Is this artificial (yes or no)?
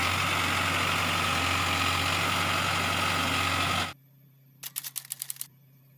no